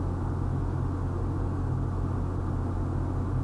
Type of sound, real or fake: real